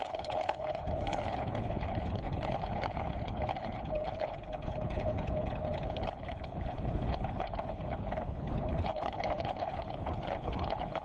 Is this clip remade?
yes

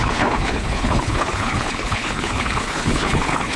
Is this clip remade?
yes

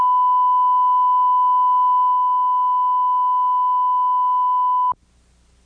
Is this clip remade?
no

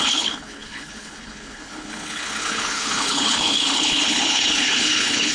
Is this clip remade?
yes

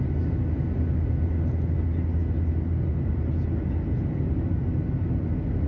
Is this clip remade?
no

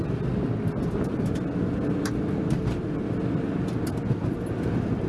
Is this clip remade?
no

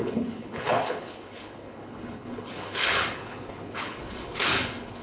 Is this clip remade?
yes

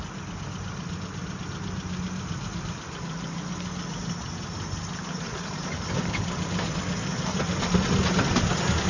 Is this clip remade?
no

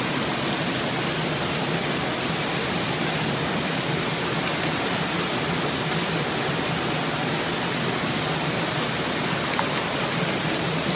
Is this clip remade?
no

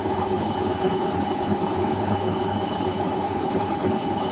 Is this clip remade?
yes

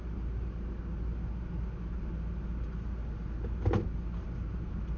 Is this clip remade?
no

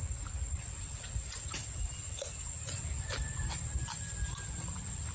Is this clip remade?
no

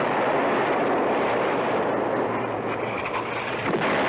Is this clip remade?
no